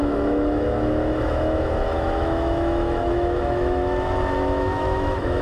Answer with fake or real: fake